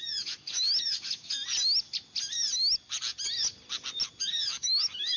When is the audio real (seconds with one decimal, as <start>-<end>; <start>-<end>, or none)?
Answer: 1.4-4.2